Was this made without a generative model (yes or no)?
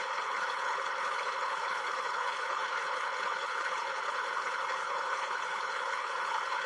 no